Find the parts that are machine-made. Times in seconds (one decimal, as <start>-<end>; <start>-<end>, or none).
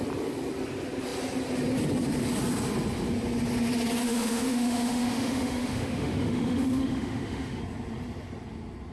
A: 4.0-7.6